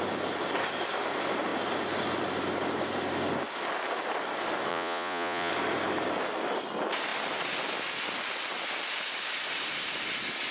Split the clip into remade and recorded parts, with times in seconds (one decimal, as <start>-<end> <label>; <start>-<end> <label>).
0.0-4.7 recorded; 4.7-5.5 remade; 5.5-10.5 recorded